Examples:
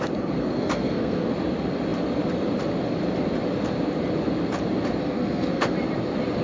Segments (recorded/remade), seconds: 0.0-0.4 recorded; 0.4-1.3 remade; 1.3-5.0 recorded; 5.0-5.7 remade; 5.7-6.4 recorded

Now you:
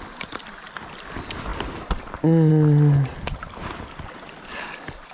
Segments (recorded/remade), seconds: 0.0-5.1 recorded

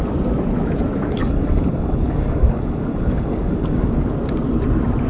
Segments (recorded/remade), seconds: 0.0-1.2 recorded; 1.2-3.9 remade; 3.9-5.1 recorded

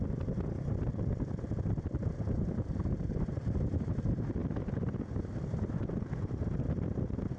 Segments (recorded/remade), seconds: 0.0-7.4 remade

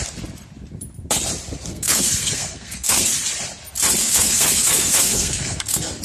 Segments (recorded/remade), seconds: 0.0-1.7 recorded; 1.7-3.1 remade; 3.1-4.0 recorded; 4.0-6.0 remade

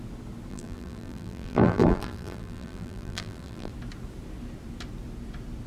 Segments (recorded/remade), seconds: 0.0-0.5 recorded; 0.5-3.7 remade; 3.7-5.7 recorded

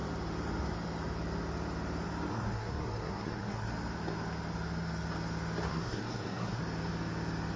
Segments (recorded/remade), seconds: 0.0-2.3 recorded; 2.3-3.7 remade; 3.7-5.7 recorded; 5.7-6.6 remade; 6.6-7.6 recorded

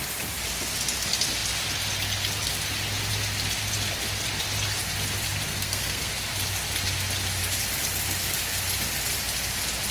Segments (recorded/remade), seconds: 0.0-5.5 recorded; 5.5-6.1 remade; 6.1-9.9 recorded